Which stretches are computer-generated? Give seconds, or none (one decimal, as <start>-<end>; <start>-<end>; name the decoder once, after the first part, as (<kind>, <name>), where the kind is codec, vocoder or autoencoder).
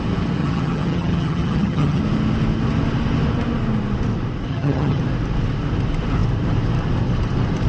0.4-2.0 (vocoder, HiFi-GAN); 4.5-5.0